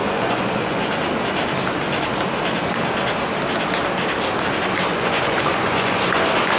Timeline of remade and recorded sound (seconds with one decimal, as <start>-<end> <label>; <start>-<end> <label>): 0.0-0.9 remade; 0.9-4.9 recorded; 4.9-6.6 remade